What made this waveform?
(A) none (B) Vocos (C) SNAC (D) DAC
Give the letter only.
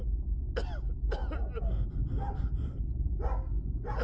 A